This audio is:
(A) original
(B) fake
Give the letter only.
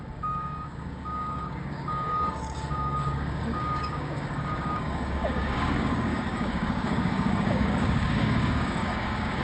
B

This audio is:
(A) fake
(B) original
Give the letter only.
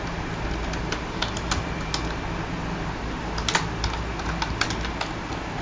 B